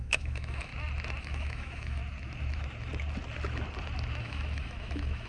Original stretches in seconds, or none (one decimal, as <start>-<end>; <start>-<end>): 0.7-1.2; 2.0-4.2